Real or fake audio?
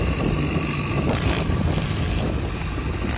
real